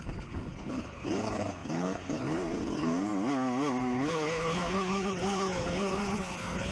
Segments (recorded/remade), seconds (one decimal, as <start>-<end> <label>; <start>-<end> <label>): 0.0-3.1 remade; 3.1-3.8 recorded; 3.8-6.7 remade